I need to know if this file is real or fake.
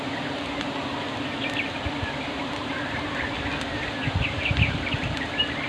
real